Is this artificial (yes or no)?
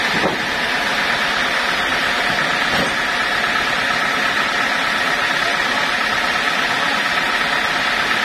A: no